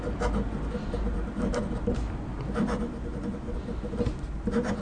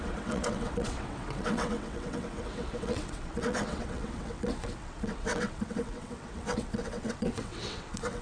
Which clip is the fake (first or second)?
second